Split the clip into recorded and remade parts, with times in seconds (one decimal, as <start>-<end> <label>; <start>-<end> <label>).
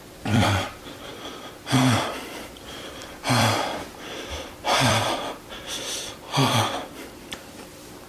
0.0-8.1 remade